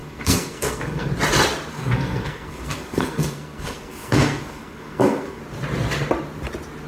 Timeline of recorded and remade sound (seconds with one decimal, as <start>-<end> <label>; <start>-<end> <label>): 0.0-1.1 remade; 1.1-1.7 recorded; 1.7-5.4 remade; 5.4-6.9 recorded